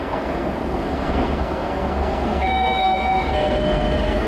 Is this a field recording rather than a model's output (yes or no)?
no